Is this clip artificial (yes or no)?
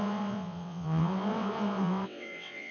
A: yes